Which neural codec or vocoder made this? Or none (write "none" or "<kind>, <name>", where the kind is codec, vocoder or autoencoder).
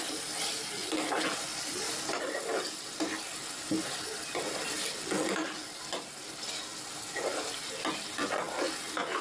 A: none